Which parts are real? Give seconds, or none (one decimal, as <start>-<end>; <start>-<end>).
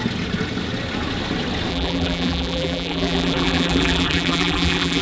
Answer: 0.0-1.7